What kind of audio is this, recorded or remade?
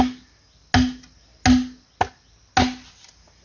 recorded